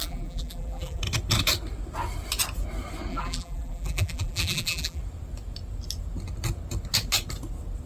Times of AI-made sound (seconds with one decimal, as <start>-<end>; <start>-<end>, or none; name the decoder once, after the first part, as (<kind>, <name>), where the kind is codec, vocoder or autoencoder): 0.0-1.0 (vocoder, BigVGAN v2); 3.1-5.0